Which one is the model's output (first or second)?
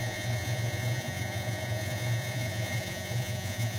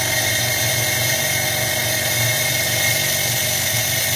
first